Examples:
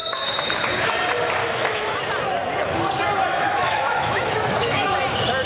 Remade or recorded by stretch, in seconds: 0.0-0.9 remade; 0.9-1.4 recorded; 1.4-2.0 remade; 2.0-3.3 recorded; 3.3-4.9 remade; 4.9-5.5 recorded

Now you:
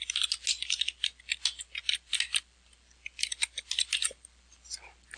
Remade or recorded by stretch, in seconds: 0.0-5.2 recorded

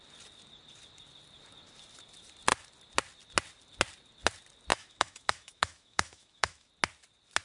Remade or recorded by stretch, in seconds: 0.0-4.7 recorded; 4.7-6.7 remade; 6.7-7.4 recorded

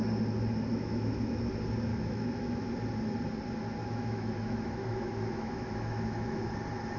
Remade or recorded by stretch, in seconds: 0.0-0.7 recorded; 0.7-1.5 remade; 1.5-1.9 recorded; 1.9-2.7 remade; 2.7-3.8 recorded; 3.8-6.5 remade; 6.5-7.0 recorded

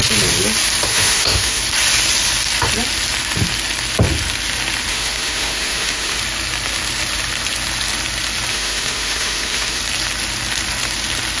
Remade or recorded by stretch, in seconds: 0.0-0.9 recorded; 0.9-1.6 remade; 1.6-4.9 recorded; 4.9-6.2 remade; 6.2-8.5 recorded; 8.5-9.8 remade; 9.8-11.4 recorded

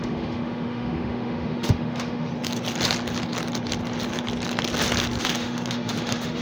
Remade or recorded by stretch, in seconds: 0.0-2.3 remade; 2.3-5.2 recorded; 5.2-6.4 remade